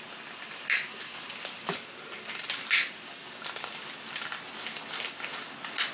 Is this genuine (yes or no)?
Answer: yes